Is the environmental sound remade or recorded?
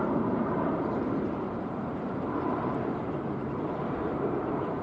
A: remade